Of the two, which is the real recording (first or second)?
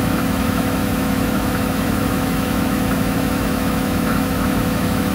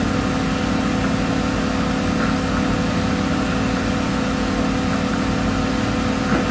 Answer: second